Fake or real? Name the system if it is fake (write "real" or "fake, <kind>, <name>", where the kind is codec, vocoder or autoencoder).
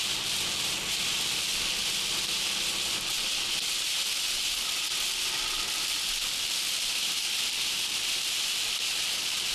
real